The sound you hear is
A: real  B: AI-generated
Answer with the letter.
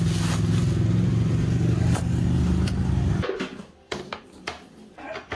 A